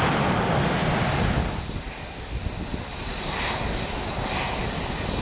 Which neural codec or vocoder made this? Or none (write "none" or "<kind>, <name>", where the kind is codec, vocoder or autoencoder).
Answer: none